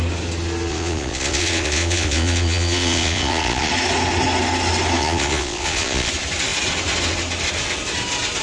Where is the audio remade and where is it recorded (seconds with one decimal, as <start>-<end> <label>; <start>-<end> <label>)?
0.0-0.7 recorded; 0.7-3.7 remade; 3.7-5.0 recorded; 5.0-6.1 remade; 6.1-8.4 recorded